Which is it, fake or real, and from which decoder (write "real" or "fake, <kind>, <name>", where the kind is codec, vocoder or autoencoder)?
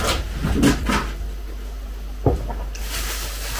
real